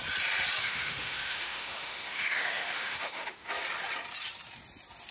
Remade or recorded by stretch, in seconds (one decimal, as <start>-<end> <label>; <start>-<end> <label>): 0.0-0.6 recorded; 0.6-3.5 remade; 3.5-5.1 recorded